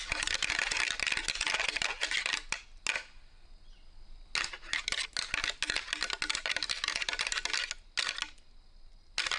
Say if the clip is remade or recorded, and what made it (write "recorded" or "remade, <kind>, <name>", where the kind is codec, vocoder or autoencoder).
recorded